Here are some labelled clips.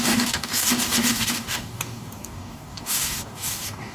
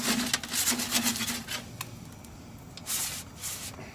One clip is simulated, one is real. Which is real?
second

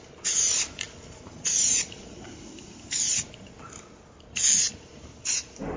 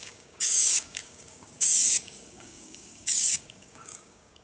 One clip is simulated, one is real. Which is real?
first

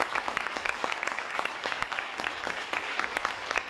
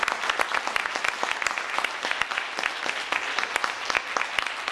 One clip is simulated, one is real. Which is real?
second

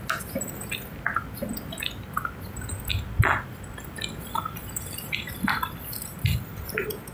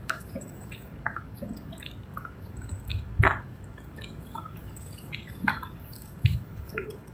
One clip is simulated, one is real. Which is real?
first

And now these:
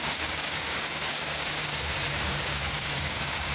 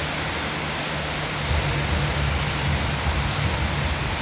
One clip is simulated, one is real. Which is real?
second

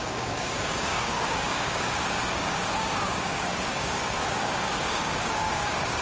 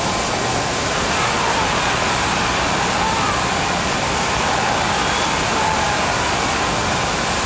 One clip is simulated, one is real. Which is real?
second